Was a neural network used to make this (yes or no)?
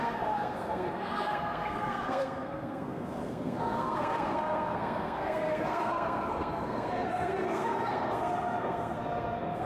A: yes